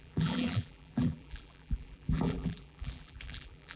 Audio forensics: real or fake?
fake